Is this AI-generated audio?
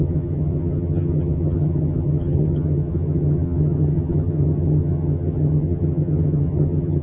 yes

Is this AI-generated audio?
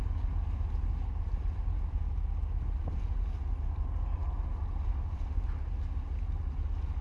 no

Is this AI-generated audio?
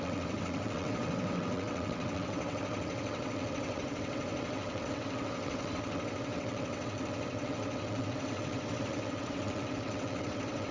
yes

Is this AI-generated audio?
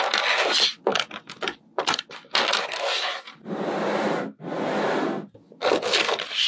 no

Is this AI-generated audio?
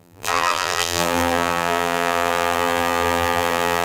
yes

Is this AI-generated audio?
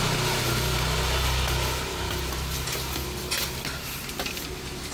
no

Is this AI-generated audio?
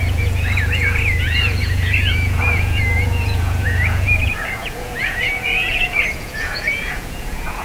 yes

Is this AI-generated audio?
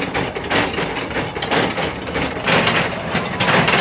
no